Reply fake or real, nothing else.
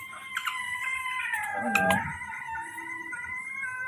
real